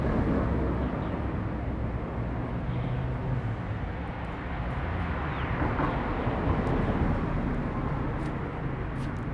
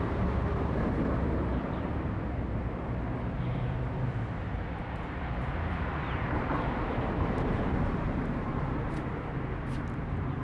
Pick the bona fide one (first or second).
first